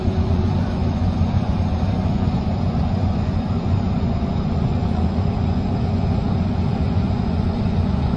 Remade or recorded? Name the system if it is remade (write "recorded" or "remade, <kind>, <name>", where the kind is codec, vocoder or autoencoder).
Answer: remade, vocoder, Vocos